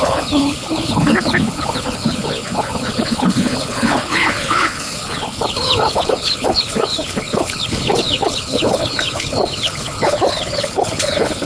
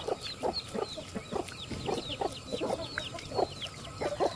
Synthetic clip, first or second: first